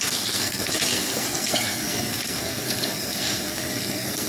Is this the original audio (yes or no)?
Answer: no